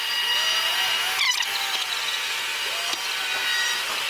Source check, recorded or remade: recorded